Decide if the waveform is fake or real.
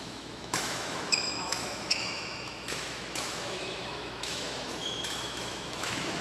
fake